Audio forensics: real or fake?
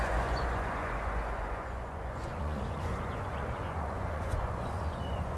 fake